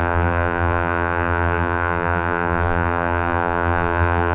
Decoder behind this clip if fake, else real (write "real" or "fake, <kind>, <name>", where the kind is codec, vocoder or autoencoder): fake, vocoder, BigVGAN v2